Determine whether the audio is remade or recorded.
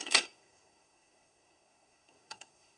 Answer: remade